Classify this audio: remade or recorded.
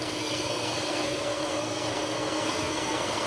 remade